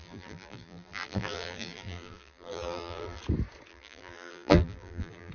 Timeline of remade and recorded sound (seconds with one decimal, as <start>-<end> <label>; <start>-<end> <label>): 0.0-3.2 remade; 3.2-3.7 recorded; 3.7-5.3 remade